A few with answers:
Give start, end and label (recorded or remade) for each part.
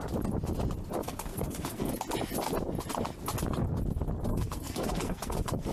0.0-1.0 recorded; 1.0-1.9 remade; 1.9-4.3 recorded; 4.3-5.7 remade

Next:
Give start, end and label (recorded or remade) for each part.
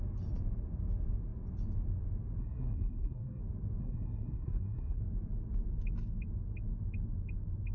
0.0-2.4 recorded; 2.4-3.4 remade; 3.4-3.8 recorded; 3.8-5.0 remade; 5.0-7.7 recorded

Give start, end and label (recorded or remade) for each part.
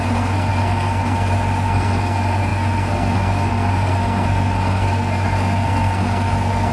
0.0-6.7 remade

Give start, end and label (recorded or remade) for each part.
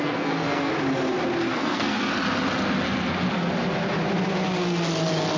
0.0-0.7 remade; 0.7-1.5 recorded; 1.5-2.1 remade; 2.1-5.4 recorded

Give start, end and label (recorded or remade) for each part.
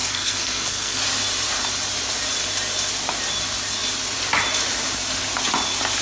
0.0-1.0 remade; 1.0-6.0 recorded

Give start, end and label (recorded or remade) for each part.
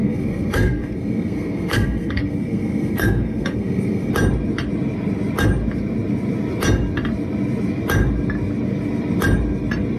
0.0-4.1 remade; 4.1-10.0 recorded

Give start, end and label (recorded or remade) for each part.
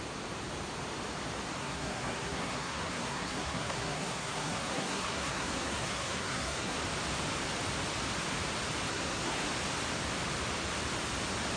0.0-1.6 recorded; 1.6-6.8 remade; 6.8-8.9 recorded; 8.9-9.5 remade; 9.5-11.6 recorded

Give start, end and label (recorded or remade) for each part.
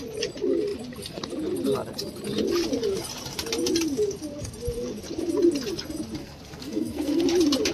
0.0-6.2 recorded; 6.2-7.2 remade; 7.2-7.7 recorded